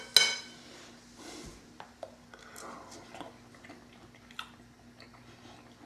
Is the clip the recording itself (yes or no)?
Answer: yes